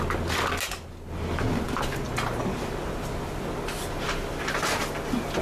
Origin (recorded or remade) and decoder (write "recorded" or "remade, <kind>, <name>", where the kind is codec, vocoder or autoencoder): recorded